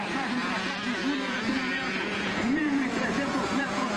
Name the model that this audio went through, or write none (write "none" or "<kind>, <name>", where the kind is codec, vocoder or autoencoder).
vocoder, Vocos